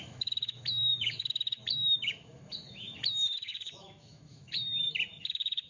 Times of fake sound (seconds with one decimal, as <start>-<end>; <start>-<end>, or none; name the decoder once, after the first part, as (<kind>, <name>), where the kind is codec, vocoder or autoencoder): 0.0-5.7 (autoencoder, DAC-VAE)